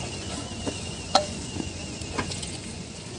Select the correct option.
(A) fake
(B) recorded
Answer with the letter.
A